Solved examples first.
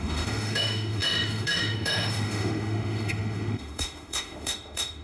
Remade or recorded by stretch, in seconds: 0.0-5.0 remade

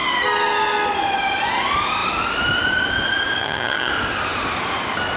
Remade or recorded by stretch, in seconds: 0.0-3.4 recorded; 3.4-3.9 remade; 3.9-5.2 recorded